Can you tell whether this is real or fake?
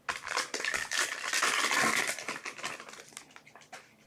real